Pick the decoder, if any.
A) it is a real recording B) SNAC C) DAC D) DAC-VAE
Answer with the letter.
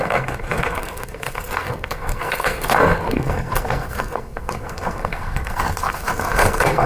B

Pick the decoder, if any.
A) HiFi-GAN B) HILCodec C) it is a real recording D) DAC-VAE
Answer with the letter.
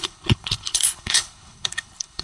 B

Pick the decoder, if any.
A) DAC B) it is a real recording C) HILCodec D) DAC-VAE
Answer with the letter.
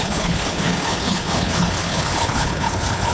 C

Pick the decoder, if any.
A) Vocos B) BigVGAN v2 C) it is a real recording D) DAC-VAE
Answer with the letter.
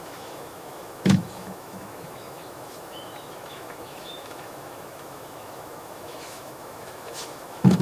D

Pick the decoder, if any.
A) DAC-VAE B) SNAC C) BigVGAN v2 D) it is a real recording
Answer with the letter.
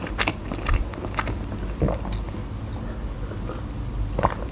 D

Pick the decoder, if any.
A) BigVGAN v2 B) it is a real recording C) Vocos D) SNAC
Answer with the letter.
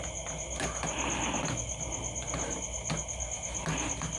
B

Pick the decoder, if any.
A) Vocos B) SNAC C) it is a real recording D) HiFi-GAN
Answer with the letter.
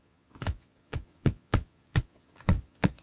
A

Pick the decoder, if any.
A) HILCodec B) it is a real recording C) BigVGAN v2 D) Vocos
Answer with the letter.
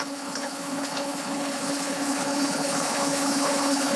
A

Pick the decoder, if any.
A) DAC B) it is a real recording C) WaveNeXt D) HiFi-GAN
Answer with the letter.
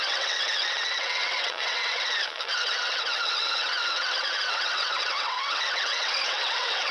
C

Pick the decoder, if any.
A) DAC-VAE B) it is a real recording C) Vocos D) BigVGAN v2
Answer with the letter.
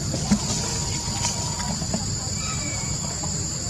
B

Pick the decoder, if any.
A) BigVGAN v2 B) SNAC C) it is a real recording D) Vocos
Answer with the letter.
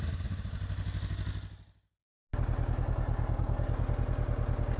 C